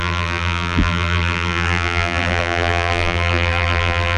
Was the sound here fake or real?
fake